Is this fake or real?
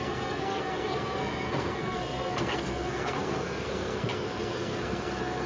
fake